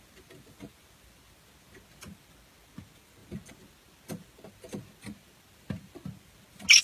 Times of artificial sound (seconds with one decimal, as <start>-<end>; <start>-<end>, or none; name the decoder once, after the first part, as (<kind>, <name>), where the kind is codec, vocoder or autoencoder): none